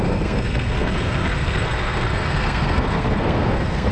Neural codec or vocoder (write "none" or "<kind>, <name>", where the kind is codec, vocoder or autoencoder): codec, SNAC